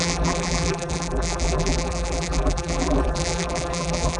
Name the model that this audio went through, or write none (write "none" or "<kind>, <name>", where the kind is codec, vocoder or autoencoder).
vocoder, BigVGAN v2